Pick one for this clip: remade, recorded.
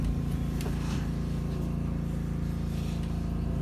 recorded